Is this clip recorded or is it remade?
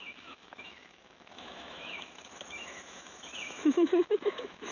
remade